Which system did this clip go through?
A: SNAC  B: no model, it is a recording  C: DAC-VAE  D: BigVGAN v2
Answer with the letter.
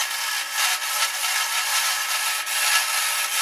B